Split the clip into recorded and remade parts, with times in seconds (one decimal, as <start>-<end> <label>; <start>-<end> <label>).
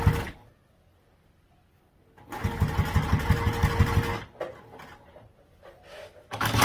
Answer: 0.0-5.9 recorded; 5.9-6.6 remade